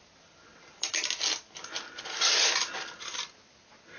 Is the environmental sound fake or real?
real